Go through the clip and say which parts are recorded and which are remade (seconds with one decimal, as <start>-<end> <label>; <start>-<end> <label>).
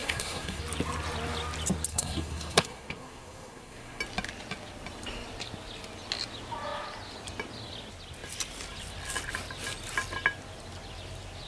0.0-0.6 remade; 0.6-1.9 recorded; 1.9-4.0 remade; 4.0-11.5 recorded